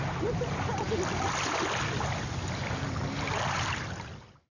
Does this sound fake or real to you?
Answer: real